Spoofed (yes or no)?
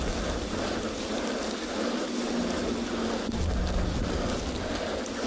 no